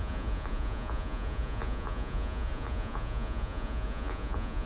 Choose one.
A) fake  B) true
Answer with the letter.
A